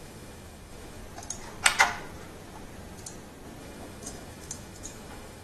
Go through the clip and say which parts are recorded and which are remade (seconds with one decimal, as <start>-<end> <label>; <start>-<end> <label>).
0.0-1.0 remade; 1.0-3.6 recorded; 3.6-5.4 remade